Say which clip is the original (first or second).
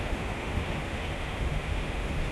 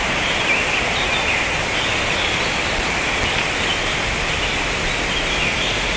second